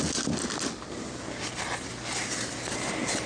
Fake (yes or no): no